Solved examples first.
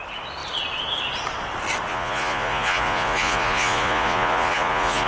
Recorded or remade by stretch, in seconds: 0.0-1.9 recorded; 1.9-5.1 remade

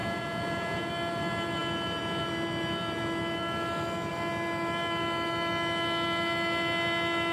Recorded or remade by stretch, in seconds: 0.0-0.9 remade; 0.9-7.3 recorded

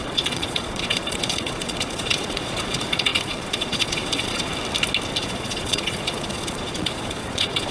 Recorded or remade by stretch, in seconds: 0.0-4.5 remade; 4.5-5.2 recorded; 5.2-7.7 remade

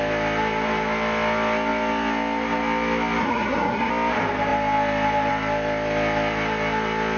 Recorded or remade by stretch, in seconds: 0.0-3.2 recorded; 3.2-3.9 remade; 3.9-7.2 recorded

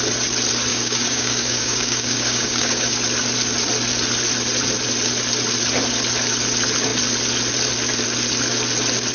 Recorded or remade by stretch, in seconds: 0.0-0.7 recorded; 0.7-2.9 remade; 2.9-9.1 recorded

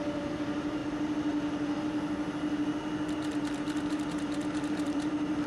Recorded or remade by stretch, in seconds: 0.0-0.8 remade; 0.8-4.1 recorded; 4.1-5.5 remade

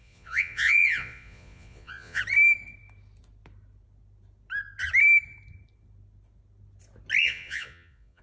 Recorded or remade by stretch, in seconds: 0.0-2.2 remade; 2.2-7.2 recorded; 7.2-8.2 remade